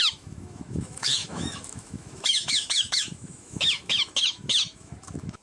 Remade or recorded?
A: remade